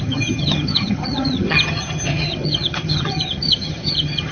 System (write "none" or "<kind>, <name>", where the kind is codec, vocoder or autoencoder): vocoder, HiFi-GAN